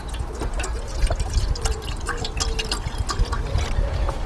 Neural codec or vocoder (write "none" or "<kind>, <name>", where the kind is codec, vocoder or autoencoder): none